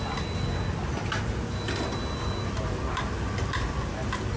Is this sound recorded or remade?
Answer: recorded